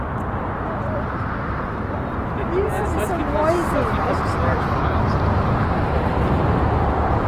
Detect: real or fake real